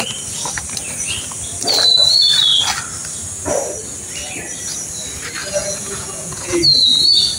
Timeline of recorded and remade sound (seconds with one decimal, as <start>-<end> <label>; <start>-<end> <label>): 0.0-5.4 recorded; 5.4-6.6 remade; 6.6-7.4 recorded